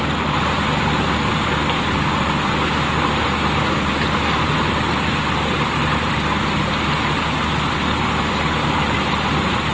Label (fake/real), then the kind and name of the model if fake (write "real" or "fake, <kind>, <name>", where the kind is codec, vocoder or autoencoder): real